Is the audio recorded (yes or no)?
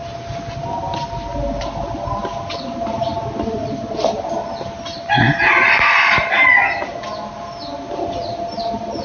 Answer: yes